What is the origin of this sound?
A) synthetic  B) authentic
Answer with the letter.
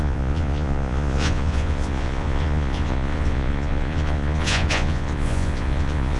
A